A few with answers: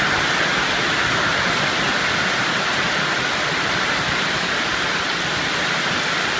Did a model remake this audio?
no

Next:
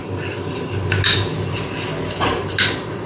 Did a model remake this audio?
no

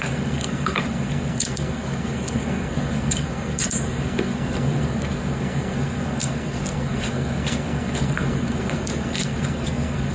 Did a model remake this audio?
yes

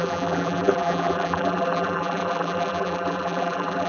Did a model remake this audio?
yes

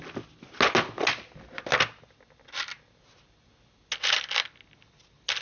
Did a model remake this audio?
no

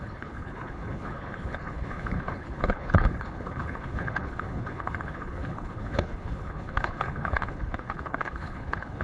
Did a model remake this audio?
yes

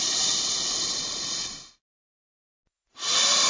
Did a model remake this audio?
no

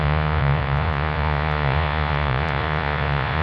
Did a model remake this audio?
yes